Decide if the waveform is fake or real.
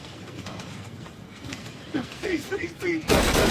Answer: fake